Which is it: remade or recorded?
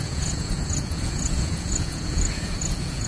remade